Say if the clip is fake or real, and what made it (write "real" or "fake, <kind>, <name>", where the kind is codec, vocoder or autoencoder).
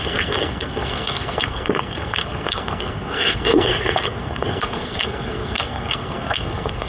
fake, codec, SNAC